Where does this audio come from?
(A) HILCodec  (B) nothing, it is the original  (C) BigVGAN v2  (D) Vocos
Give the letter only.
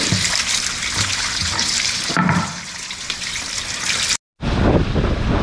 B